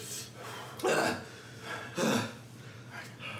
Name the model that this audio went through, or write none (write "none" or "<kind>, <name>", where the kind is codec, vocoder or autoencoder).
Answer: none